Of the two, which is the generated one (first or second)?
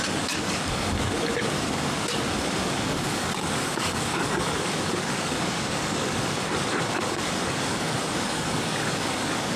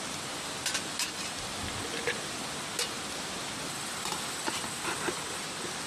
first